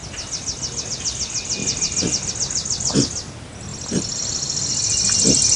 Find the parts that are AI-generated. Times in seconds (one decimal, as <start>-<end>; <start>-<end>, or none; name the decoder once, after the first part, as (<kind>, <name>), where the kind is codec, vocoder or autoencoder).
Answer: none